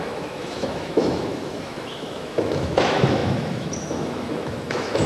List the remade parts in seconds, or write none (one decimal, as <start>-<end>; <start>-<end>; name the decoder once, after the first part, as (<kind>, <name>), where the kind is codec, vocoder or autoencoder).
0.0-5.1 (autoencoder, DAC-VAE)